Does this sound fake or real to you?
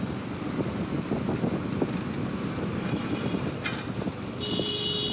real